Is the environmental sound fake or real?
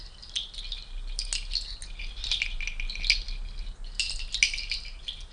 real